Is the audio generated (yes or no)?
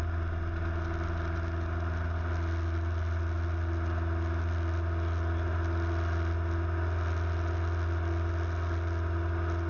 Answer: no